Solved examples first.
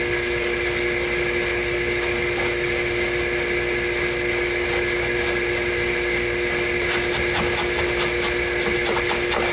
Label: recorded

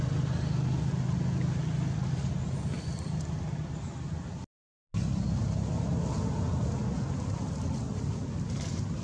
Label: recorded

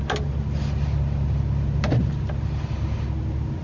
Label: recorded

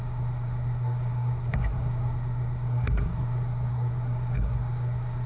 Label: remade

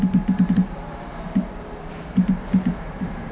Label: remade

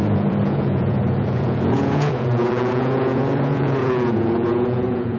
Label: remade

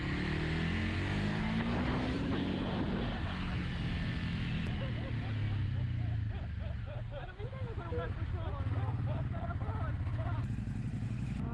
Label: recorded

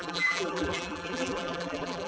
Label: remade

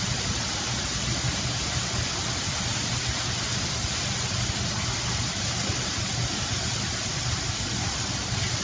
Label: recorded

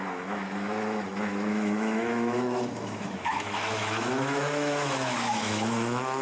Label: remade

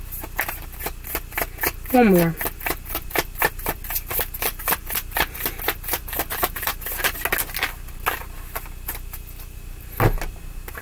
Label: recorded